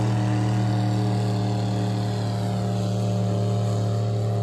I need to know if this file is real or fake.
real